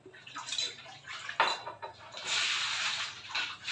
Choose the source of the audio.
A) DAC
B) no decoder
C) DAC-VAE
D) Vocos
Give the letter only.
B